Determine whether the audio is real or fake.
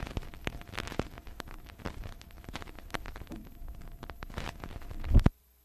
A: fake